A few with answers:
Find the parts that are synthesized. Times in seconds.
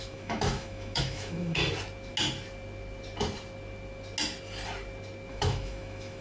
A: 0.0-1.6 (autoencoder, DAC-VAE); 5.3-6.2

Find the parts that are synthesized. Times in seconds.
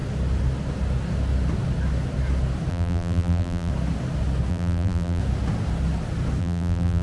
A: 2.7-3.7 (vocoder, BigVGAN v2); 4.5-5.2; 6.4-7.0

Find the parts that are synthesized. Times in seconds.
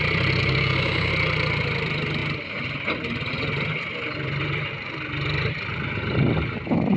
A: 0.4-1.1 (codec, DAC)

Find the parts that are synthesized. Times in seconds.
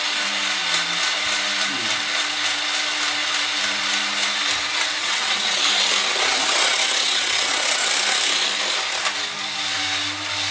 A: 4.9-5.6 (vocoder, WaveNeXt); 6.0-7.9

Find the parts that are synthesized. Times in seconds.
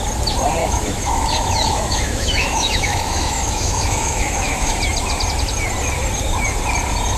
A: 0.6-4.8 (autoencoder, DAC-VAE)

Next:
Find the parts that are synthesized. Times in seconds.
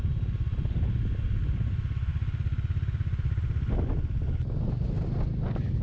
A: none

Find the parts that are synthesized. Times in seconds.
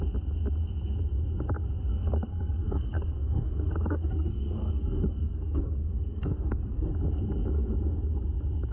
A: 1.9-6.9 (codec, SNAC)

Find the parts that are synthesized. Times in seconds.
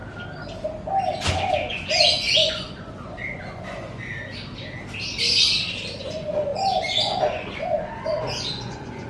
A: 1.3-4.1 (vocoder, Vocos); 6.0-9.1